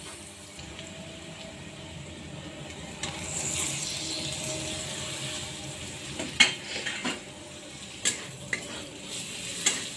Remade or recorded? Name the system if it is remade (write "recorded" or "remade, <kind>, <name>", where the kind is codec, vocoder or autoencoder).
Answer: recorded